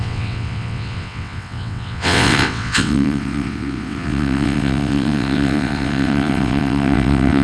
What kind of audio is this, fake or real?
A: fake